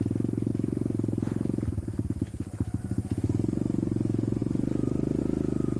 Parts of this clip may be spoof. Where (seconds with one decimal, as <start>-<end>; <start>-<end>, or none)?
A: none